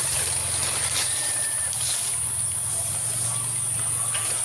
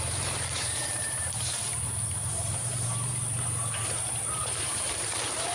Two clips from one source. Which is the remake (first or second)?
second